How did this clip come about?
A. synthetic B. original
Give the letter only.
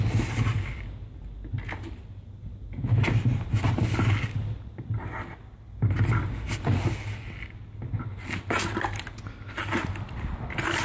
B